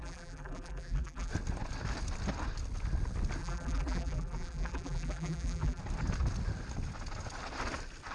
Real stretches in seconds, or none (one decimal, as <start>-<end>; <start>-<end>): 1.3-3.4; 5.8-8.1